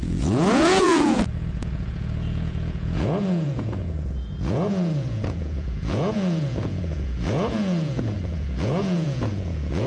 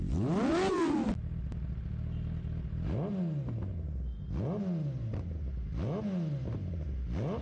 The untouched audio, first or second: second